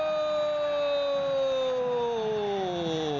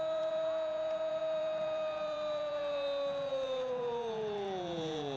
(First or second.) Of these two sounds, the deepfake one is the second